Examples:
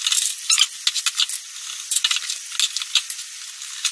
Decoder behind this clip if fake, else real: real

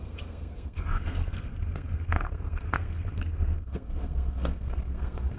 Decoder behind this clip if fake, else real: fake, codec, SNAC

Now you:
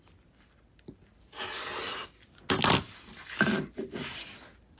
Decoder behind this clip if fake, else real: real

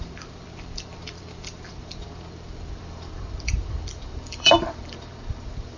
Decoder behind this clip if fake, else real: fake, vocoder, BigVGAN v2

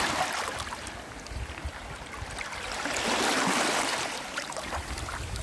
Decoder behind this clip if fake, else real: real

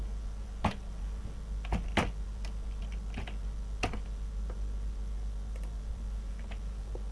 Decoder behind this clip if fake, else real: real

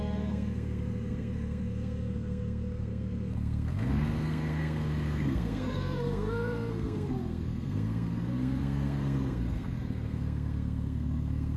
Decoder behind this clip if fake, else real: fake, codec, SNAC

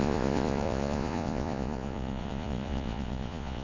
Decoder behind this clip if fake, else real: fake, vocoder, Vocos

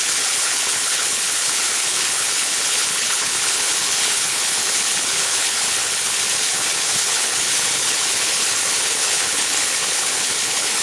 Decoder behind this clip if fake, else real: fake, codec, HILCodec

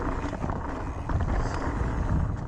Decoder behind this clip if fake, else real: real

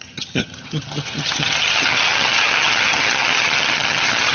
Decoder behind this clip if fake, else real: fake, vocoder, HiFi-GAN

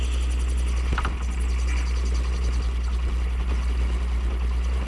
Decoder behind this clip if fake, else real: real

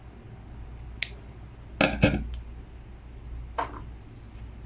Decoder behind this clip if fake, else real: real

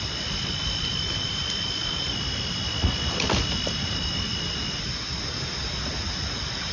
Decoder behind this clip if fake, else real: real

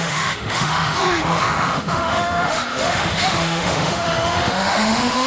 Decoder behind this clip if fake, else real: fake, autoencoder, DAC-VAE